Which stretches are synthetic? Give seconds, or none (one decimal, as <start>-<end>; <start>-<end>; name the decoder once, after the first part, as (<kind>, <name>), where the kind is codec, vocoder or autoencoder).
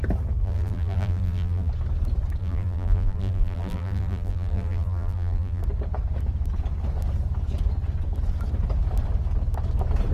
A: 0.4-1.7 (vocoder, BigVGAN v2); 2.4-5.6